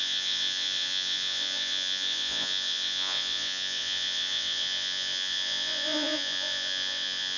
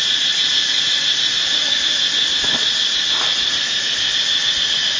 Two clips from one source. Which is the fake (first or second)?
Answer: first